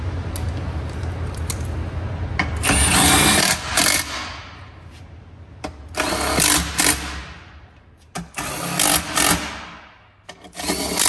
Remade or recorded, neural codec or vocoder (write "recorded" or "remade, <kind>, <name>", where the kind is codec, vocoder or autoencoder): recorded